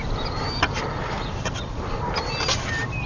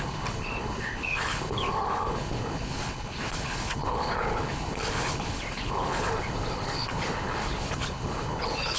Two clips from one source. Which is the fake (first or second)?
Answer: second